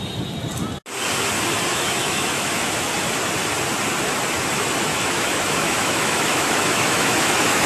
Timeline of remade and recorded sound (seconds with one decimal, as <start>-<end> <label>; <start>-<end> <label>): 0.0-1.7 recorded; 1.7-2.6 remade; 2.6-4.9 recorded; 4.9-7.7 remade